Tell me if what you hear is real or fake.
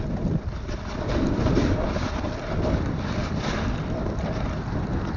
real